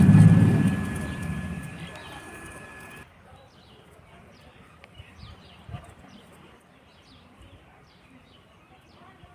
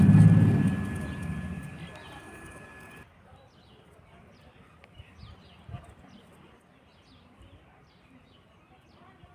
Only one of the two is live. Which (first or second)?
second